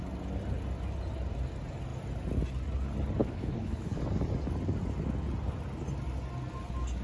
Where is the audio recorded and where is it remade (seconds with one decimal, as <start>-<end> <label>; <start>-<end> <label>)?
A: 0.0-3.2 recorded; 3.2-4.0 remade; 4.0-7.0 recorded